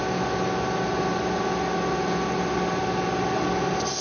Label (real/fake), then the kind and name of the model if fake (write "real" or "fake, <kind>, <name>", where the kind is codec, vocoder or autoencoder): real